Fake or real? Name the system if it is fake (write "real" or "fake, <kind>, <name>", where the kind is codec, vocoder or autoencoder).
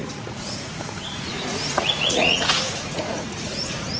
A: fake, vocoder, Vocos